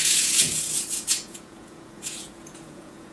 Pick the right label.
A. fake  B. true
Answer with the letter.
A